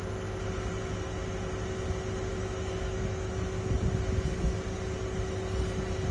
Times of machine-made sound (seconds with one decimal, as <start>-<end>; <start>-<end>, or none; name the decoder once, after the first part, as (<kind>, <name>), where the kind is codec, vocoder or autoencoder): 2.3-3.3 (autoencoder, DAC-VAE)